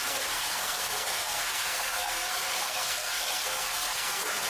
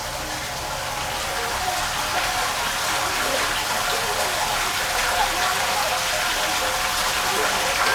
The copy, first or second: first